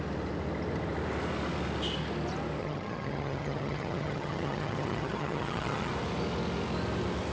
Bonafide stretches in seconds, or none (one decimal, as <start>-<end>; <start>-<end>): 0.0-2.6; 5.9-7.3